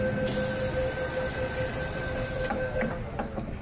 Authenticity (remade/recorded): recorded